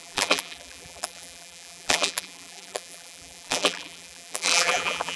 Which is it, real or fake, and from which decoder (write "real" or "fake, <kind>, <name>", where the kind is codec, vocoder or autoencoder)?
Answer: fake, vocoder, BigVGAN v2